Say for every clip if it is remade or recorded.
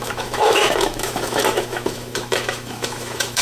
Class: remade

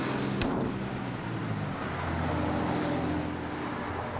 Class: recorded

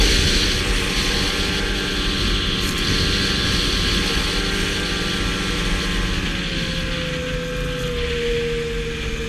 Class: recorded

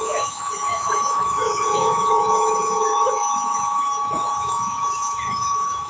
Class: remade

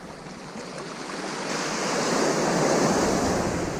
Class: recorded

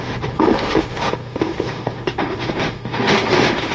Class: remade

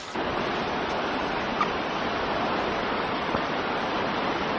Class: recorded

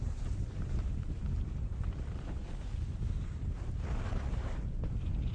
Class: recorded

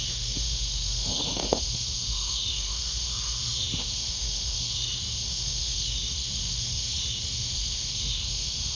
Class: remade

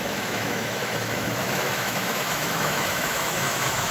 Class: remade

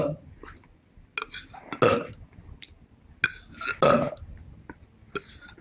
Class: recorded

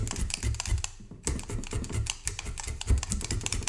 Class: recorded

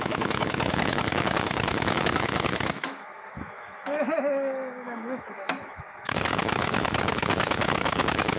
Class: remade